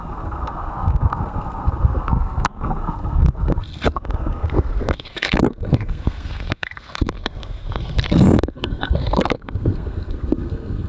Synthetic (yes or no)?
yes